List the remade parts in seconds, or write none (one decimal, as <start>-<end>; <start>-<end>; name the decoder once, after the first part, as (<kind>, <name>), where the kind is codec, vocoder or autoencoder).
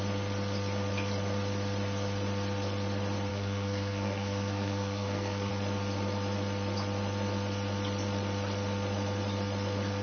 3.3-5.5 (codec, SNAC)